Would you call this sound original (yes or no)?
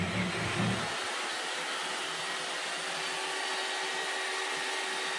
yes